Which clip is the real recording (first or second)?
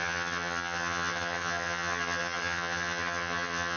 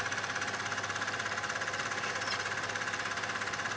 second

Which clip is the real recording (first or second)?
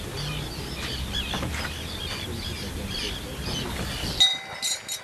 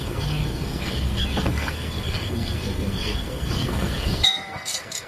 first